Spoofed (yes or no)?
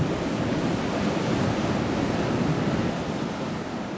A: no